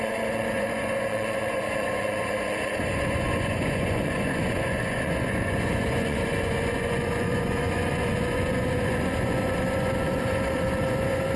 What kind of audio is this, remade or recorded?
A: remade